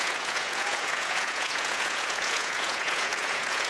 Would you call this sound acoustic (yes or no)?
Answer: no